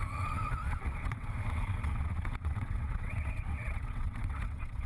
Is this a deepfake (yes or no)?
yes